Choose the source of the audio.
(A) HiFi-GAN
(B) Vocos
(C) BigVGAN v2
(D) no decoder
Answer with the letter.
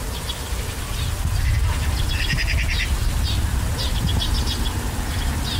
D